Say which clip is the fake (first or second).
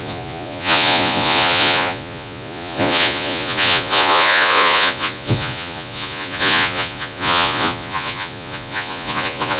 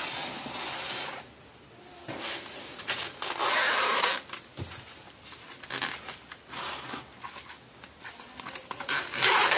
first